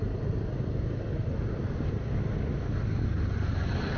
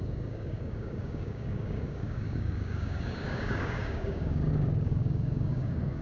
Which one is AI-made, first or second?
second